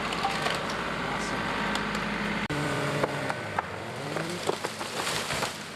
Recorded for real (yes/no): no